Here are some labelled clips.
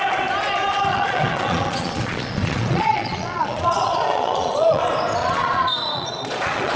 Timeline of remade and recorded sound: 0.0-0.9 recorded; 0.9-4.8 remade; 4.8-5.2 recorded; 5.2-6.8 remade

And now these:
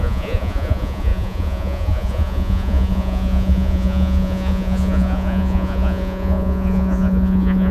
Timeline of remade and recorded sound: 0.0-7.7 remade

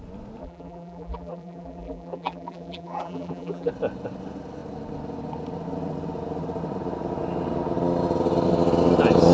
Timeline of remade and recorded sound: 0.0-0.4 recorded; 0.4-3.7 remade; 3.7-9.3 recorded

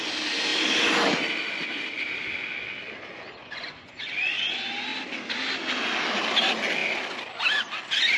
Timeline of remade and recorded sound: 0.0-3.4 recorded; 3.4-4.5 remade; 4.5-8.2 recorded

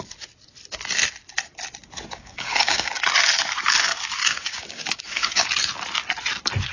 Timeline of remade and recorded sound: 0.0-2.1 recorded; 2.1-2.9 remade; 2.9-4.2 recorded; 4.2-5.5 remade; 5.5-6.7 recorded